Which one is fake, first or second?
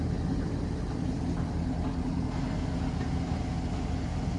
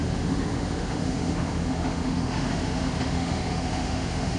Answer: second